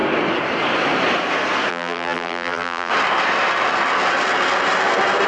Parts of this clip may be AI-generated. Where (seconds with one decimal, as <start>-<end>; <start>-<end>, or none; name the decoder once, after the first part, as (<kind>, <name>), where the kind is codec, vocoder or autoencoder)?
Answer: 1.7-2.9 (vocoder, BigVGAN v2)